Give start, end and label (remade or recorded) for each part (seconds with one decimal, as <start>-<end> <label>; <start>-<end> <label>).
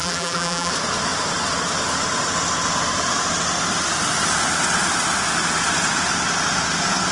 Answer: 0.0-0.7 remade; 0.7-7.1 recorded